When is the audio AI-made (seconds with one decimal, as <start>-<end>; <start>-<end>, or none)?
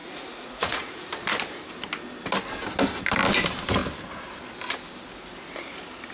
0.0-1.1